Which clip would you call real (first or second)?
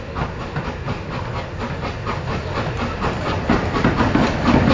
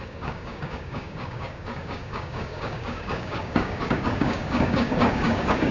first